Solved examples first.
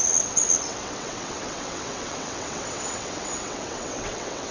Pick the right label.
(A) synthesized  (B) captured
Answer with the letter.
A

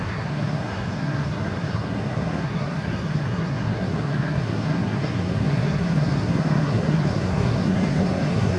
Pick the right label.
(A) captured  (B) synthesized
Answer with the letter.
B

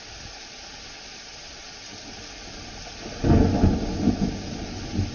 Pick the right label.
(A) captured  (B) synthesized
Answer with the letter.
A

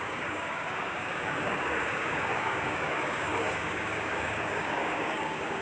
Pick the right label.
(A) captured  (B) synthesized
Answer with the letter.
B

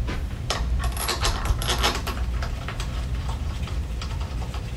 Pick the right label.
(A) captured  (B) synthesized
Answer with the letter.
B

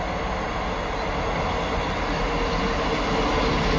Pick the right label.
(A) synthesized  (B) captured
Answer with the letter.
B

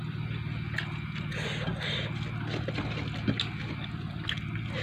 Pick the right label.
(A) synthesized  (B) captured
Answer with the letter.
B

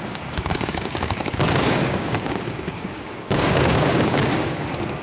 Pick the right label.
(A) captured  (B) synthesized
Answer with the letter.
B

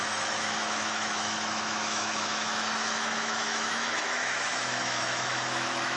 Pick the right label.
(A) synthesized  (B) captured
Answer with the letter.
A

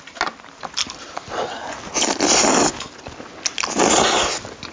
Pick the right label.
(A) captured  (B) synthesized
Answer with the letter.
A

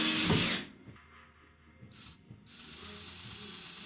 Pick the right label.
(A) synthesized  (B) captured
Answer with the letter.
B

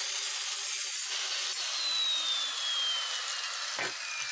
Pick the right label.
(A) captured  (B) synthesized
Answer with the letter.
A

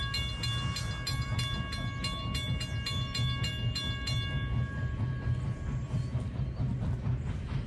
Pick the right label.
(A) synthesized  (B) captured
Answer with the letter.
B